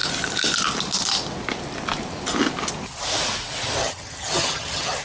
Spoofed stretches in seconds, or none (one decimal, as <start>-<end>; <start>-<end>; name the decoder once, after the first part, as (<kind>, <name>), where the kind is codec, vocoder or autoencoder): 3.8-5.0 (vocoder, HiFi-GAN)